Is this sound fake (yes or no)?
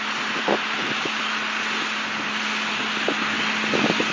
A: no